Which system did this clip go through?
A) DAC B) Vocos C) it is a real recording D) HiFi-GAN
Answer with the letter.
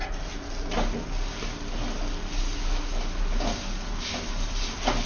C